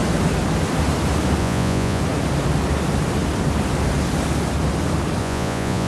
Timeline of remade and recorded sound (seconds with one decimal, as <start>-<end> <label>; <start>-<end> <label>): 0.0-1.4 recorded; 1.4-2.0 remade; 2.0-5.2 recorded; 5.2-5.9 remade